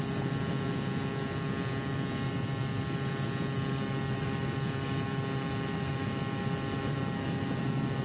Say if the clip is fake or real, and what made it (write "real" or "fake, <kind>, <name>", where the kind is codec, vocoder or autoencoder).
real